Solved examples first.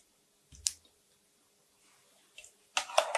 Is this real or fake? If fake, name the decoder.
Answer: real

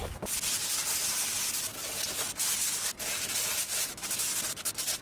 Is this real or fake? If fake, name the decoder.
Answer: real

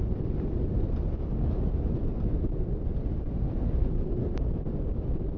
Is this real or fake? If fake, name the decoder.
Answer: real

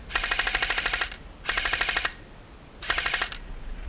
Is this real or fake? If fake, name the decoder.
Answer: real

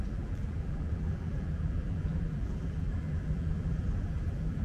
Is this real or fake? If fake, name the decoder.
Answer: fake, vocoder, BigVGAN v2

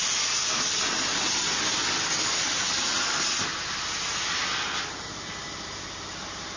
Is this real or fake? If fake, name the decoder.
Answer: real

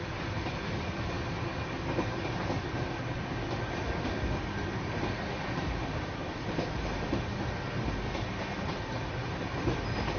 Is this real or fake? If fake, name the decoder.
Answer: real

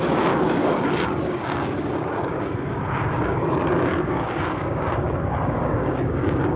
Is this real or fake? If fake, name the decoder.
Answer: fake, codec, DAC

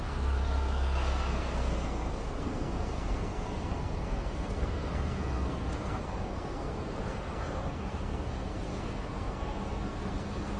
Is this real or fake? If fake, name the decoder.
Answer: fake, codec, SNAC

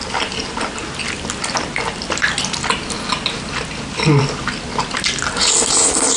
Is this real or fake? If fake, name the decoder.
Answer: real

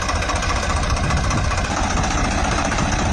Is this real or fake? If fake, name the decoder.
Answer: fake, vocoder, BigVGAN v2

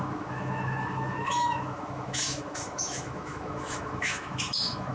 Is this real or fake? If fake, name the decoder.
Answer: fake, autoencoder, DAC-VAE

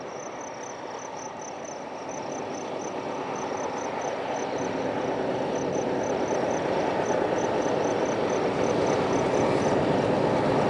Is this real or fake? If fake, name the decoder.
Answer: real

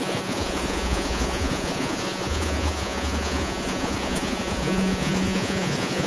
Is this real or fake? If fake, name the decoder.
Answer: fake, vocoder, Vocos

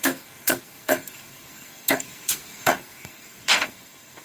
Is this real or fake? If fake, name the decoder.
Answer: fake, codec, SNAC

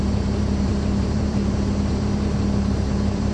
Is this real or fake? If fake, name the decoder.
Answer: fake, vocoder, BigVGAN v2